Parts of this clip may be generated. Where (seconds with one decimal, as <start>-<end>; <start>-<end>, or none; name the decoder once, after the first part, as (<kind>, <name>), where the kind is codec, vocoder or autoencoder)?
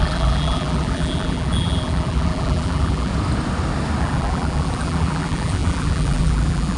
0.0-3.1 (vocoder, BigVGAN v2); 4.0-6.8